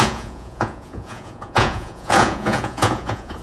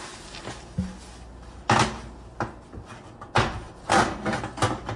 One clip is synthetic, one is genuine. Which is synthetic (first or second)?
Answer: first